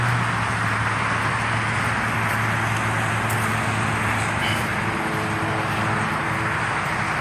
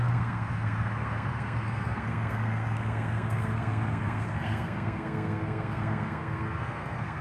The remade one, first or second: second